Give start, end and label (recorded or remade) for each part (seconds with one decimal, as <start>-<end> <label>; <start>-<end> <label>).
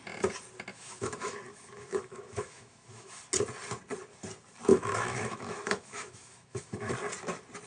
0.0-0.7 recorded; 0.7-3.2 remade; 3.2-4.7 recorded; 4.7-6.9 remade; 6.9-7.7 recorded